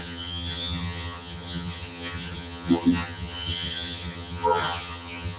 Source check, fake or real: fake